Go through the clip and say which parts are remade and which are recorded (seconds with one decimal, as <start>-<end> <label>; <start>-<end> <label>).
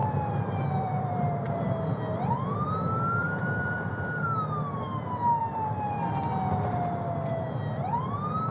0.0-1.7 remade; 1.7-3.2 recorded; 3.2-3.9 remade; 3.9-5.4 recorded; 5.4-6.2 remade; 6.2-8.5 recorded